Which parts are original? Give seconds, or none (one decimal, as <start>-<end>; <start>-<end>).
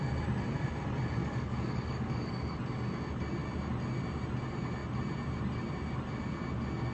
0.0-1.2; 2.6-6.9